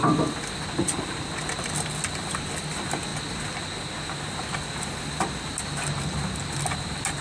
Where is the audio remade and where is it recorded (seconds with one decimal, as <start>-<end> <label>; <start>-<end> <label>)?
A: 0.0-7.2 recorded